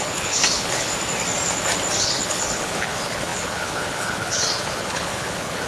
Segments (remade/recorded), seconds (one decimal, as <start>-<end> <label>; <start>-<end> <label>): 0.0-0.9 remade; 0.9-2.0 recorded; 2.0-5.7 remade